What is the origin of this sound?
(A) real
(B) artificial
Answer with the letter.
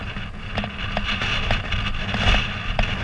A